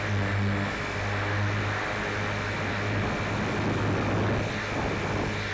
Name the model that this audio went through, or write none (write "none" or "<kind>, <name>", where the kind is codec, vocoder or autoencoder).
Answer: none